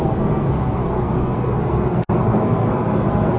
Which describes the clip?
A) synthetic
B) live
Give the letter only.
A